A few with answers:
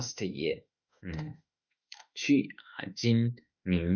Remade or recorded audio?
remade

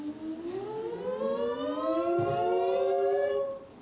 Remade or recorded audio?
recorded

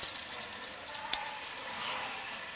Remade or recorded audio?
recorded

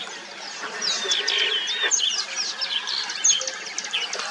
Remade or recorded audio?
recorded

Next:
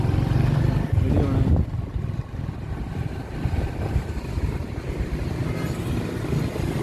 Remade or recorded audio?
recorded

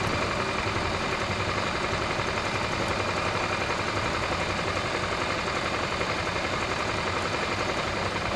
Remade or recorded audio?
recorded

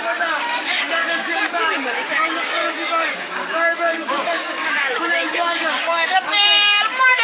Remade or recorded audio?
remade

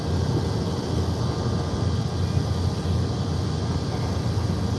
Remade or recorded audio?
recorded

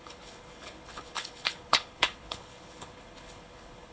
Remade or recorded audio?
remade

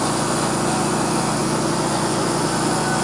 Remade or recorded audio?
remade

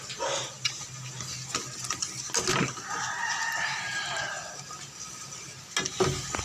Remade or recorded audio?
recorded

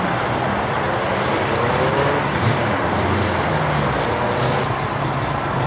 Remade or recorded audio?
recorded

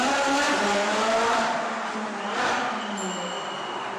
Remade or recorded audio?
recorded